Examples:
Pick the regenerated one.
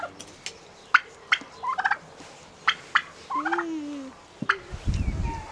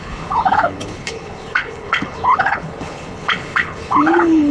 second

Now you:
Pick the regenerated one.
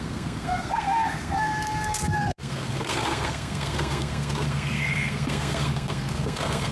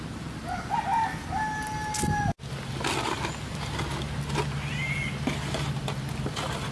first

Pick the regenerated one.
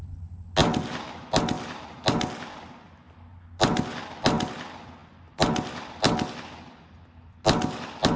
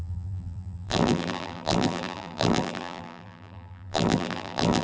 second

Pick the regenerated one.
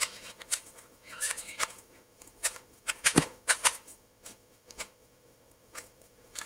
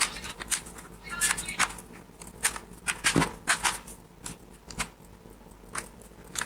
first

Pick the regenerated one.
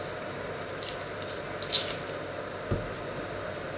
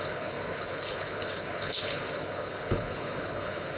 second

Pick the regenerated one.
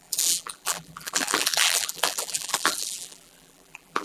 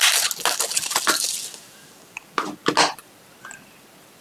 first